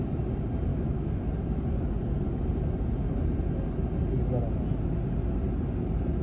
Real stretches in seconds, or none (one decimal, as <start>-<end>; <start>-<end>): 0.0-0.7; 1.2-6.2